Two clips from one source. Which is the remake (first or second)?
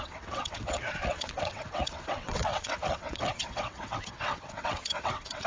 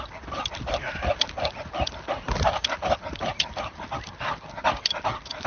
first